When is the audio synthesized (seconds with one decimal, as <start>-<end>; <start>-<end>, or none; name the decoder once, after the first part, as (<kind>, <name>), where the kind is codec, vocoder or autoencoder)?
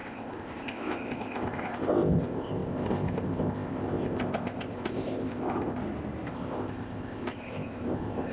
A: 0.0-5.8 (codec, ZipCodec); 6.3-8.3